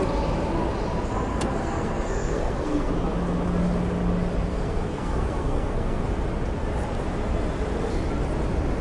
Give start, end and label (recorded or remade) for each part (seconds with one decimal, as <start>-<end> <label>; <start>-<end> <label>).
0.0-1.3 recorded; 1.3-2.9 remade; 2.9-4.5 recorded; 4.5-6.0 remade; 6.0-8.8 recorded